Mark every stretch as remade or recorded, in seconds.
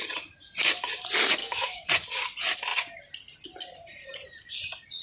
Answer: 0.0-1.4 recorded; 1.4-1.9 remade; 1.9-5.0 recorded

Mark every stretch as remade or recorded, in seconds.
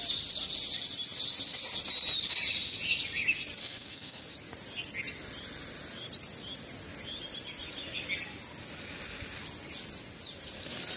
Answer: 0.0-3.6 recorded; 3.6-4.2 remade; 4.2-11.0 recorded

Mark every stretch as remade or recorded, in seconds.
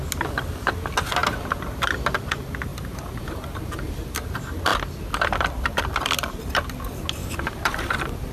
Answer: 0.0-2.7 recorded; 2.7-4.3 remade; 4.3-7.2 recorded; 7.2-8.3 remade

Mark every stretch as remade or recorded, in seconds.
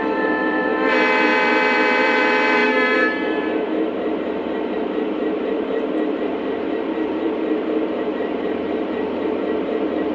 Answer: 0.0-10.1 remade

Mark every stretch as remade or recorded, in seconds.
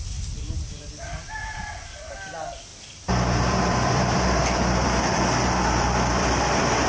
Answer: 0.0-2.7 recorded; 2.7-6.9 remade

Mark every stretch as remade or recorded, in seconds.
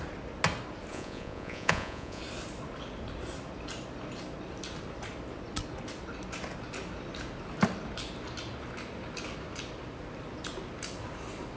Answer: 0.0-0.9 recorded; 0.9-2.2 remade; 2.2-11.6 recorded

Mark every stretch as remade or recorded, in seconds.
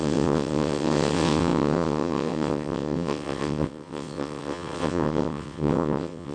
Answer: 0.0-6.3 remade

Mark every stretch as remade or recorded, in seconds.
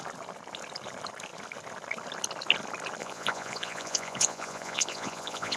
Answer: 0.0-3.0 recorded; 3.0-5.6 remade